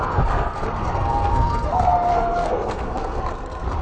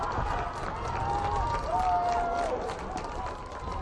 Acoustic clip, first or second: second